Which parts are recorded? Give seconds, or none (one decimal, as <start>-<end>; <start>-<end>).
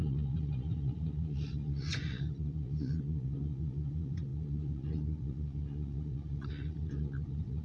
none